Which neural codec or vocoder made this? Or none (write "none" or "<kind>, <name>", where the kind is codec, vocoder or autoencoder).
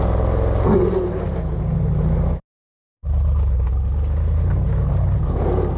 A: none